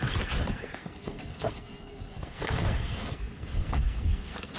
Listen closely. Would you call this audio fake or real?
fake